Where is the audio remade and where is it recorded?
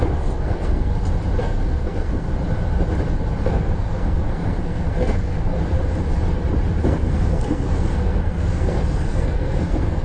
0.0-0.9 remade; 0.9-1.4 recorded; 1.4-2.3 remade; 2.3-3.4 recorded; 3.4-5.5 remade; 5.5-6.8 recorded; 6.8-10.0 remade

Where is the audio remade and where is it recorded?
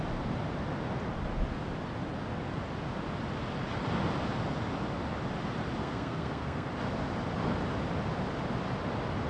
0.0-5.8 recorded; 5.8-6.7 remade; 6.7-9.3 recorded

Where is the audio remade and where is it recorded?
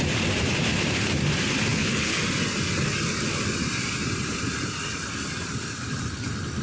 0.0-1.7 recorded; 1.7-2.2 remade; 2.2-6.6 recorded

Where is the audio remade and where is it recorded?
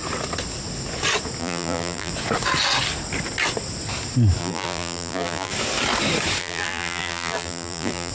0.0-1.4 recorded; 1.4-2.1 remade; 2.1-4.4 recorded; 4.4-5.5 remade; 5.5-6.4 recorded; 6.4-8.1 remade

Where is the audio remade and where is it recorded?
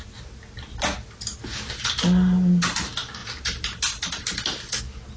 0.0-5.2 recorded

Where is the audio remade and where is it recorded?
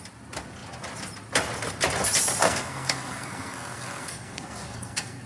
0.0-2.4 recorded; 2.4-5.3 remade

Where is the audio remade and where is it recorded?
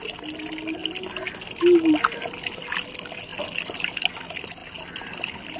0.0-5.6 recorded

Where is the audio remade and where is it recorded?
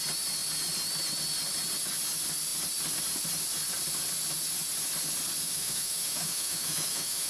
0.0-5.4 recorded; 5.4-7.3 remade